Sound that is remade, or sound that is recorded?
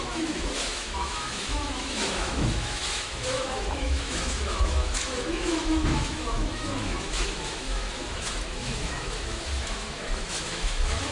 remade